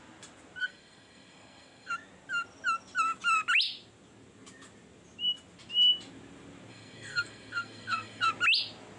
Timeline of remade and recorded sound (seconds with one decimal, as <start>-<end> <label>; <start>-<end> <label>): 0.0-0.6 recorded; 0.6-1.9 remade; 1.9-6.7 recorded; 6.7-8.3 remade; 8.3-9.0 recorded